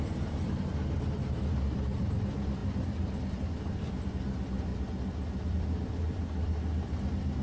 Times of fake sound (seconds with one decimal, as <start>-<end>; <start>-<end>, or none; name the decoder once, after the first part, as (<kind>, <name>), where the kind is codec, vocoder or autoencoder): 0.0-4.7 (vocoder, BigVGAN v2); 5.5-7.4